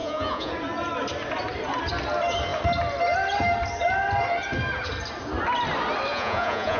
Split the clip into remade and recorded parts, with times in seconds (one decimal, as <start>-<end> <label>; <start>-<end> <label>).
0.0-0.5 remade; 0.5-6.1 recorded; 6.1-6.8 remade